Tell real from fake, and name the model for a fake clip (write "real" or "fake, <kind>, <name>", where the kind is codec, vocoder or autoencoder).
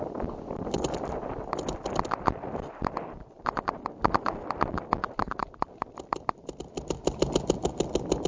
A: real